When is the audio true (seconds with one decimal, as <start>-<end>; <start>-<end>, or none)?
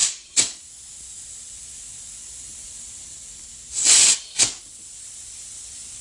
0.7-6.0